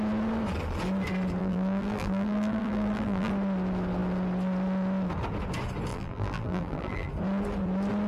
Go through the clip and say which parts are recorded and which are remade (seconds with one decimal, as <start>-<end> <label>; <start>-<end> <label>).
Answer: 0.0-1.4 recorded; 1.4-3.3 remade; 3.3-5.9 recorded; 5.9-7.1 remade; 7.1-8.1 recorded